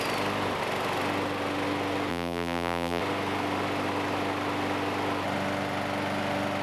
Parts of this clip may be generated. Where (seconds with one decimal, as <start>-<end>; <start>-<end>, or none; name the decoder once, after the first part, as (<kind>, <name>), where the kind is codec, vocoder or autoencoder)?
2.1-3.0 (vocoder, BigVGAN v2)

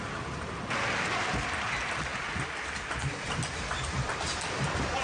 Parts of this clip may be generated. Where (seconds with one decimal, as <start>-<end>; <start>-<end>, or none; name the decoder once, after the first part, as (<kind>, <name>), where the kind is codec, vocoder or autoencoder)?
none

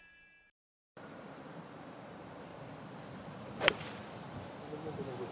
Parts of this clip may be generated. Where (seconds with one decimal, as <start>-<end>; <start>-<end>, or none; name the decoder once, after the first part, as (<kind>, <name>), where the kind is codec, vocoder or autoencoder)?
0.0-2.5 (vocoder, BigVGAN v2); 3.3-4.0; 4.7-5.3